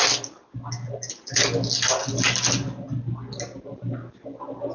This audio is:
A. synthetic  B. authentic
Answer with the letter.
B